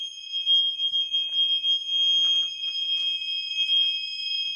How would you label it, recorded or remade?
recorded